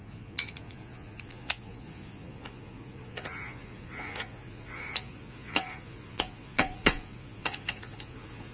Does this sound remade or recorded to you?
remade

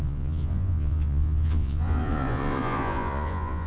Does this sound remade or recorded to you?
remade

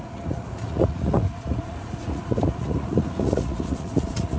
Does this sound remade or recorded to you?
remade